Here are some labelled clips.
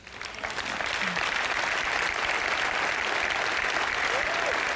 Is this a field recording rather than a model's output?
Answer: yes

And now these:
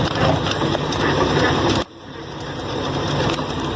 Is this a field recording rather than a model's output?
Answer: no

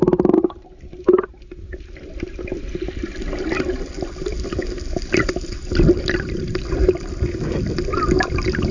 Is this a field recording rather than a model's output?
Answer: yes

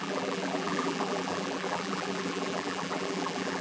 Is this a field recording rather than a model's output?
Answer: no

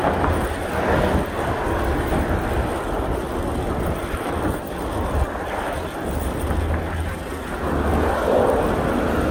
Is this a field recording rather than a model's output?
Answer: yes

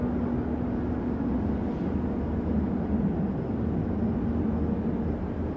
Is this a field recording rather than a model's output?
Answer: yes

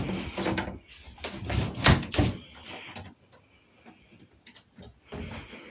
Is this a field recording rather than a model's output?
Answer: yes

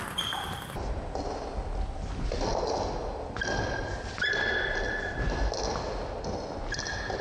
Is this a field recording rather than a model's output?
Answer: yes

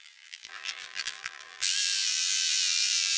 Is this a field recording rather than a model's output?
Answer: no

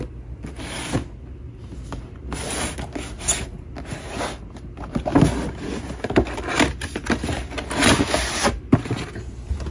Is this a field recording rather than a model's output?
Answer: yes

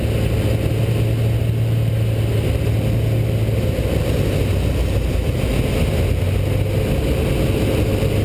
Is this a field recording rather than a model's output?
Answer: yes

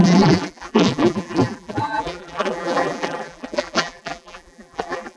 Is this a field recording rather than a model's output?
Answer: no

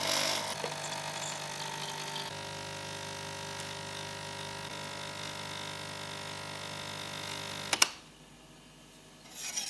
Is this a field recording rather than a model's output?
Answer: yes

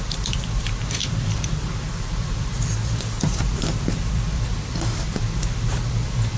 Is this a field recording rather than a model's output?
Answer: no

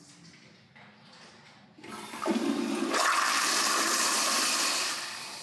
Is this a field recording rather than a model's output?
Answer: no